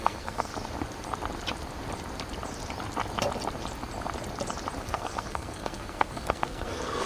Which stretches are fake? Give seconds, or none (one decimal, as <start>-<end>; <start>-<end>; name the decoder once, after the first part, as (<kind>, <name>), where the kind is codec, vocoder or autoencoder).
0.0-0.5 (codec, SNAC); 4.8-7.1